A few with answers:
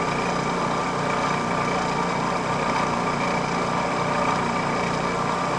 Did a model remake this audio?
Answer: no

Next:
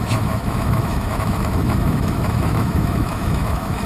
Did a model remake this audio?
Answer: yes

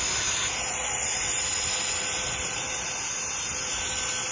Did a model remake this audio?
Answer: no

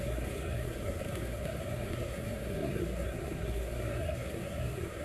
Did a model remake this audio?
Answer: yes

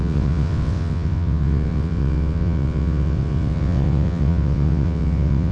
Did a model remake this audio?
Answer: yes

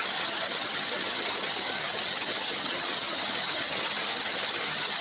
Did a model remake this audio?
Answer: yes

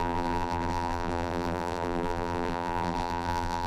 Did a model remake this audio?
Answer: yes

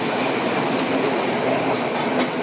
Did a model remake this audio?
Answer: no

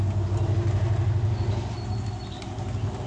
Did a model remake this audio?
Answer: no